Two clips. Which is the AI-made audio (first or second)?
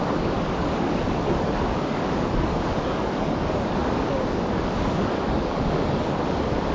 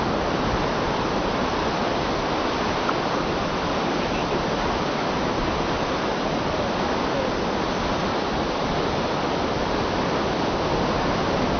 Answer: first